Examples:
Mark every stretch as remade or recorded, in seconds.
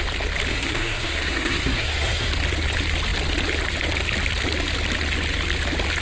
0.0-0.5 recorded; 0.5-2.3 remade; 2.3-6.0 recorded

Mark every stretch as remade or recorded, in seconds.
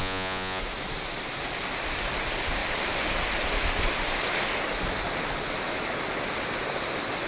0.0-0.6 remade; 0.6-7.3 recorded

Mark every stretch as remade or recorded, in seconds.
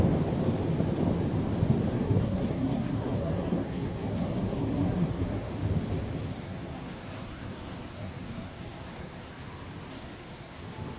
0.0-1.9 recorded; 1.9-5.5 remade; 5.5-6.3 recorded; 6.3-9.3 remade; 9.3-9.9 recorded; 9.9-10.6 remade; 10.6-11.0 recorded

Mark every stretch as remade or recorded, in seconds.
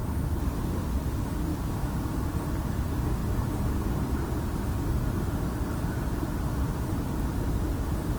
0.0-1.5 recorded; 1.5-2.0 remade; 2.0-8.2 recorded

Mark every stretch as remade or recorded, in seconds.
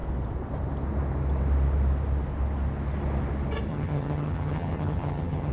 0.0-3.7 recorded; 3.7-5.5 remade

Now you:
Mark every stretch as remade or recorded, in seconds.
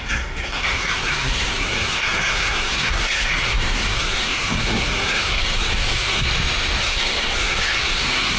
0.0-6.3 remade; 6.3-6.8 recorded; 6.8-8.4 remade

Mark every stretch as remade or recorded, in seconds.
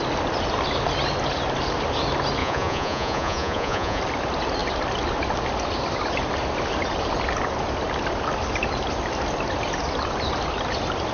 0.0-2.4 recorded; 2.4-4.0 remade; 4.0-11.1 recorded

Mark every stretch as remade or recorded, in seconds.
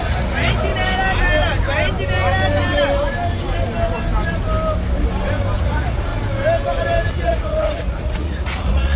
0.0-0.7 remade; 0.7-5.6 recorded; 5.6-6.1 remade; 6.1-7.1 recorded; 7.1-9.0 remade